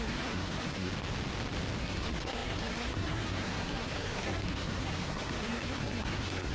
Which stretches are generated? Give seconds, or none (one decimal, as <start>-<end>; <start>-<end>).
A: 0.0-0.9; 1.8-6.5